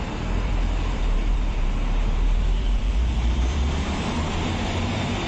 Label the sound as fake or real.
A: fake